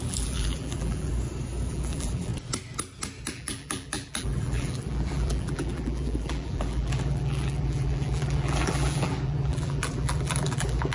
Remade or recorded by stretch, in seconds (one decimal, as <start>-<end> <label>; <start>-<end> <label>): 0.0-1.1 remade; 1.1-1.7 recorded; 1.7-2.3 remade; 2.3-3.3 recorded; 3.3-10.9 remade